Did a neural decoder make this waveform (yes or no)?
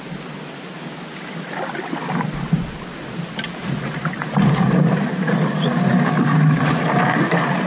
no